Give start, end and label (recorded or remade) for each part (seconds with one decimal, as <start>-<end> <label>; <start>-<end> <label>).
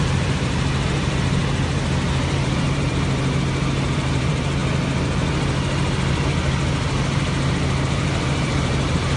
0.0-1.4 remade; 1.4-2.2 recorded; 2.2-4.6 remade; 4.6-7.5 recorded; 7.5-9.2 remade